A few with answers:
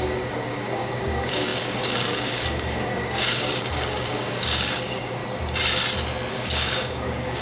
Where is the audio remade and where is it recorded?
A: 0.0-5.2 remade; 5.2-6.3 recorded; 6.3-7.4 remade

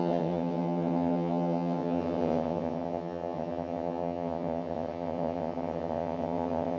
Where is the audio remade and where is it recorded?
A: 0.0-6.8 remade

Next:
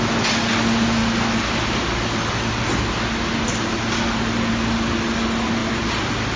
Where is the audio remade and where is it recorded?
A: 0.0-6.4 recorded

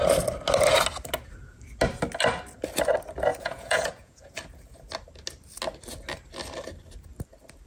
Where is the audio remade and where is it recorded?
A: 0.0-3.3 recorded; 3.3-4.3 remade; 4.3-7.7 recorded

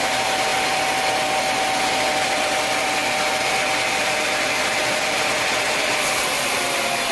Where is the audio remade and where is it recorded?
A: 0.0-7.1 recorded